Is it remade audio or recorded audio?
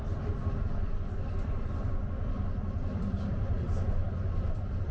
remade